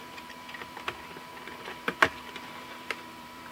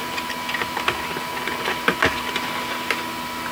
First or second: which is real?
second